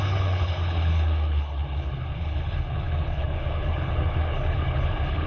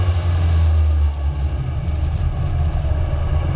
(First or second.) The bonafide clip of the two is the second